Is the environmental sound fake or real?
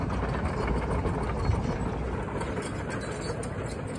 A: real